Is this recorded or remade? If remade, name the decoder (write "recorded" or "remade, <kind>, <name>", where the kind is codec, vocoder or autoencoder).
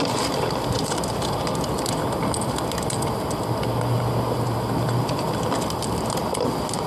recorded